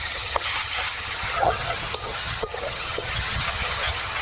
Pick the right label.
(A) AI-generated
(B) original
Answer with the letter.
A